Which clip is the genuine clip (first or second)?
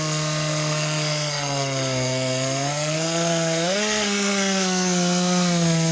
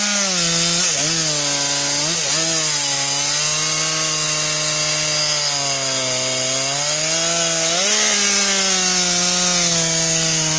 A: second